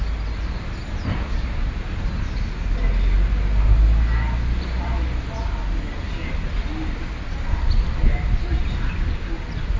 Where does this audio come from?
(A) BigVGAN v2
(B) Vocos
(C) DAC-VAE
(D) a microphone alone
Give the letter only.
D